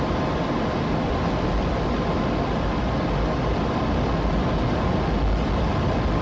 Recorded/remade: recorded